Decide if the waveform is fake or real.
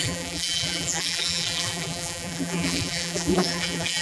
fake